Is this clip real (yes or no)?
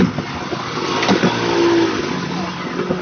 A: yes